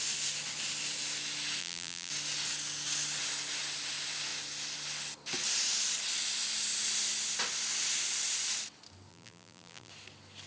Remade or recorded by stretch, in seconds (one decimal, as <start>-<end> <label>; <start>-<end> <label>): 0.0-1.6 recorded; 1.6-2.1 remade; 2.1-9.1 recorded; 9.1-9.9 remade; 9.9-10.5 recorded